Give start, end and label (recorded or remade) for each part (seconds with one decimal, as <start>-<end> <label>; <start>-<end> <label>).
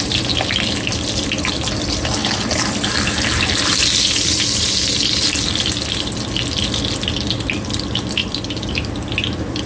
0.0-8.2 recorded; 8.2-8.7 remade; 8.7-9.7 recorded